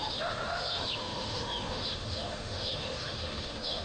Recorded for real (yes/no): no